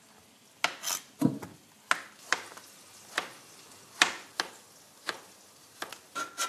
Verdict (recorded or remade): recorded